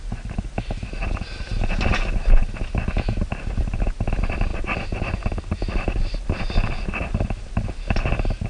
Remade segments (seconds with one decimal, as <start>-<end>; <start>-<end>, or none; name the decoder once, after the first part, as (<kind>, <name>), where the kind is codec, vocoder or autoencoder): none